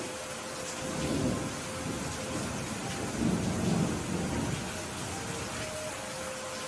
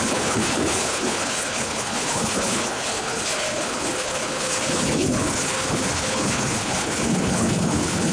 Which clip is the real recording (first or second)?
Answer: first